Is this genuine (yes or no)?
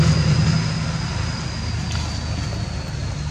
yes